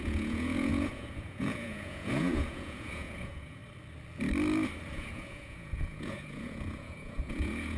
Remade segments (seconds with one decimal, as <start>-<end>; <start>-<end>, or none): 0.0-3.6; 4.9-7.8